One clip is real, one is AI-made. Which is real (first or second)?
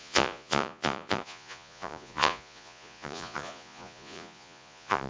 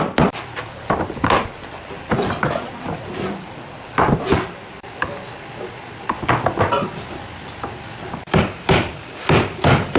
second